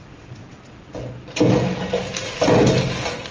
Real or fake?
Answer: real